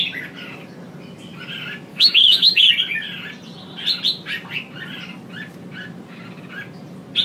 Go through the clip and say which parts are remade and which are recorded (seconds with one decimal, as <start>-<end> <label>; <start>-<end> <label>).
0.0-1.9 recorded; 1.9-2.7 remade; 2.7-7.2 recorded

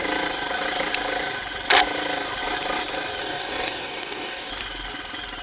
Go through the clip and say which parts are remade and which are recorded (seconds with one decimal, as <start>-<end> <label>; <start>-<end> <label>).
0.0-3.2 recorded; 3.2-4.5 remade; 4.5-5.4 recorded